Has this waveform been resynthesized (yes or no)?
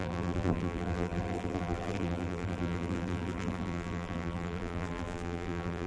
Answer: yes